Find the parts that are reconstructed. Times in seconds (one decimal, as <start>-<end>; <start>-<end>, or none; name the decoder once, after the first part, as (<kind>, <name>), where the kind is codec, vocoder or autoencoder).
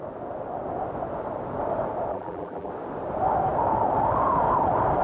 2.1-2.7 (vocoder, BigVGAN v2)